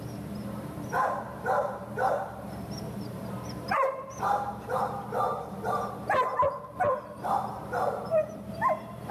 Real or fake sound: fake